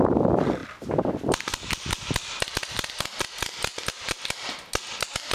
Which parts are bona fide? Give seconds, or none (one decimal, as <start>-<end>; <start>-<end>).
0.0-5.3